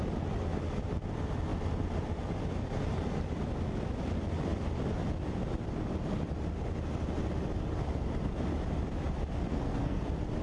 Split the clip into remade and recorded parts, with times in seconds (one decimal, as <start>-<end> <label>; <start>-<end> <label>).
0.0-9.5 recorded; 9.5-10.0 remade; 10.0-10.4 recorded